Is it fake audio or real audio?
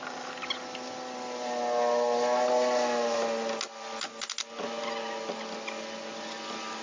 real